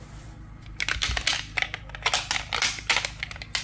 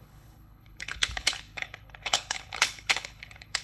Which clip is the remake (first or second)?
second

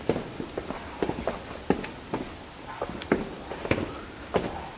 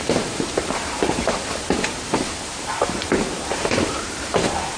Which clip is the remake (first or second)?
second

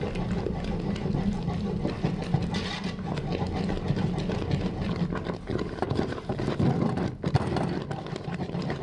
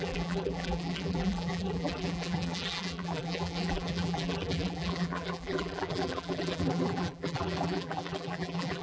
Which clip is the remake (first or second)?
second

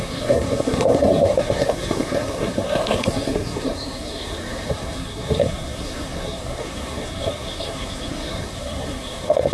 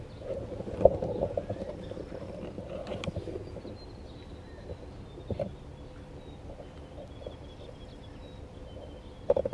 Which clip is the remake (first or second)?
first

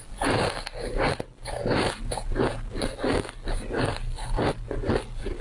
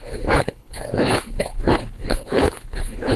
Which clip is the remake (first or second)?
second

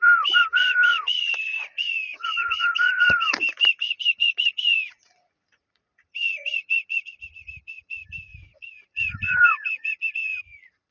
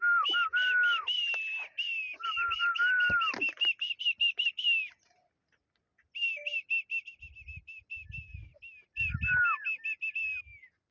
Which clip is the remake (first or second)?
first